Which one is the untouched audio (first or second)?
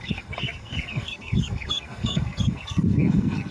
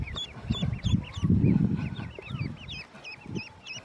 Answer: second